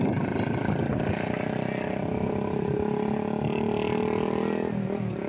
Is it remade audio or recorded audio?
recorded